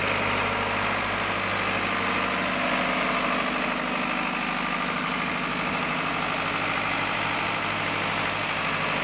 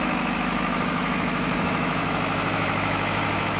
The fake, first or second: second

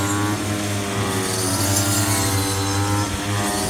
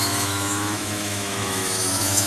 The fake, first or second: second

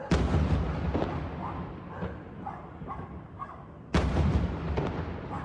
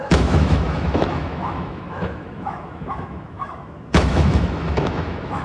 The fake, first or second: second